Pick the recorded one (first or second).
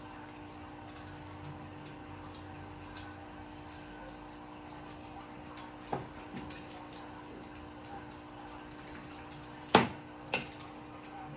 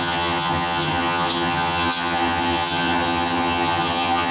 first